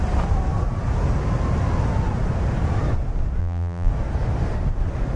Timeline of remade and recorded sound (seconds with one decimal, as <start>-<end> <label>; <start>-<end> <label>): 0.0-3.4 recorded; 3.4-3.9 remade; 3.9-5.2 recorded